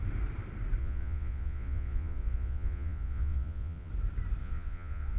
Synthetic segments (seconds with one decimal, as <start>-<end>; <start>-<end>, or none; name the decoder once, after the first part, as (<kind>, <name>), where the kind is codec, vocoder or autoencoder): 0.8-3.9 (vocoder, Vocos); 4.4-5.2